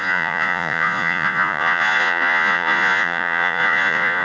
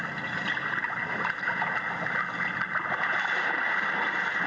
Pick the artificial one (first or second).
first